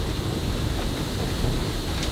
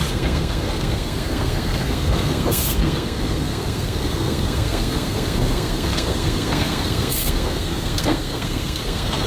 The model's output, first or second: second